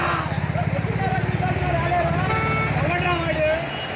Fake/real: real